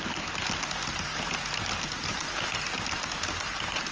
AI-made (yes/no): no